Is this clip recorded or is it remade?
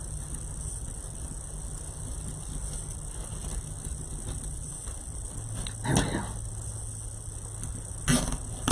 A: recorded